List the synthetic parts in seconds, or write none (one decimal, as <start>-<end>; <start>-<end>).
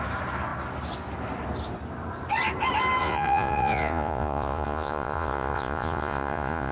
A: 3.0-6.7